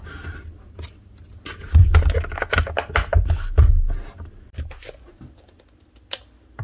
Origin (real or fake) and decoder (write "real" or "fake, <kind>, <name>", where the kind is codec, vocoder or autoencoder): real